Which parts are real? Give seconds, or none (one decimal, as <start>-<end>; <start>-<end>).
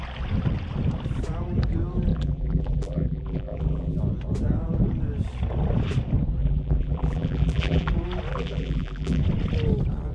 0.0-2.1; 4.0-6.4; 7.9-8.3; 9.2-10.1